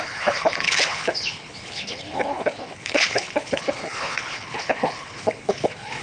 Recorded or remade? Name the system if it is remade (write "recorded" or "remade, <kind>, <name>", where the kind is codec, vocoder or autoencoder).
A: remade, codec, HILCodec